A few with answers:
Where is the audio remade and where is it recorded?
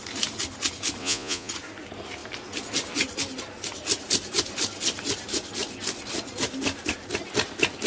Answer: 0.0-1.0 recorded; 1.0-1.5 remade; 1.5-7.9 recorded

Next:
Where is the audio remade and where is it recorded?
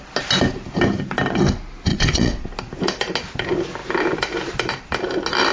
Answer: 0.0-1.9 recorded; 1.9-2.5 remade; 2.5-5.5 recorded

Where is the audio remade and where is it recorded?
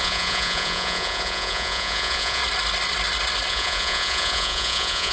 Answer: 0.0-2.4 remade; 2.4-3.5 recorded; 3.5-5.1 remade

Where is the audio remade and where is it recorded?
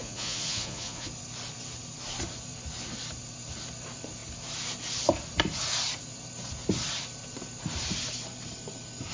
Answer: 0.0-1.1 remade; 1.1-9.1 recorded